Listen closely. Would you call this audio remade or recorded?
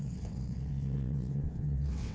remade